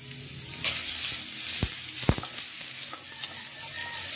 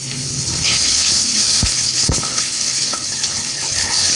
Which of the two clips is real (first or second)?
first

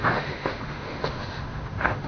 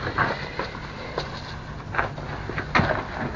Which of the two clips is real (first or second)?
second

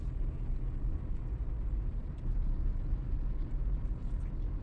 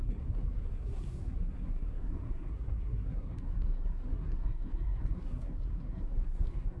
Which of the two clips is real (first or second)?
first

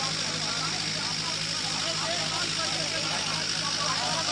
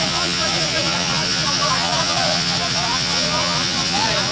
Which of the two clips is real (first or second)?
first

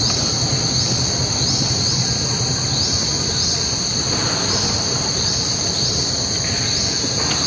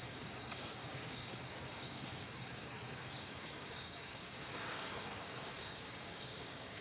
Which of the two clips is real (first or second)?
first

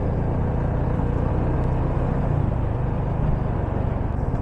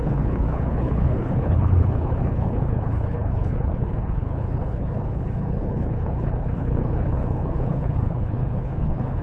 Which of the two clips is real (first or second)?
first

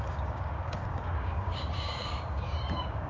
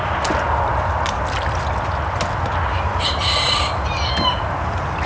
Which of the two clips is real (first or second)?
second